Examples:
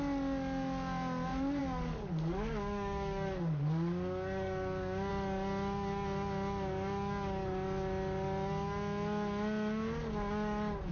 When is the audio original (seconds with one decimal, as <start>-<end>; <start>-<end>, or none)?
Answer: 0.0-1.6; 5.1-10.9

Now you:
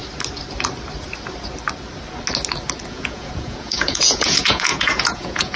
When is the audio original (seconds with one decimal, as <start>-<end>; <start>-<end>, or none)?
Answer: 0.0-2.9

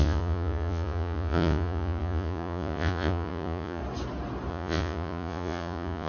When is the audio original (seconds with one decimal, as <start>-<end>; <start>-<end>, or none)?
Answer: 3.8-4.5